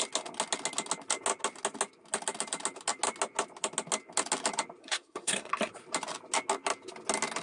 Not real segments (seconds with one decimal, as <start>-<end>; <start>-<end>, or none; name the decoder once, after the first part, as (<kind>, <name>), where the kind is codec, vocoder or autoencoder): 4.8-5.5 (codec, SNAC)